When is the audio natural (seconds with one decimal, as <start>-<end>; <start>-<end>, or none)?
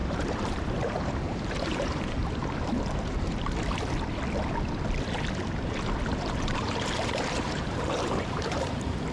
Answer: 2.2-6.2